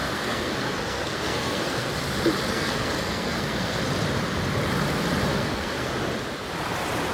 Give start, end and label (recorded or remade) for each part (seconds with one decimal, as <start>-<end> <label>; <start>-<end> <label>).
0.0-1.9 remade; 1.9-2.5 recorded; 2.5-3.8 remade; 3.8-5.3 recorded; 5.3-5.9 remade; 5.9-7.1 recorded